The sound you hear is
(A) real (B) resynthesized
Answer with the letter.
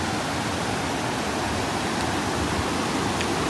A